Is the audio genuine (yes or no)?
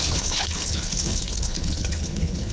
no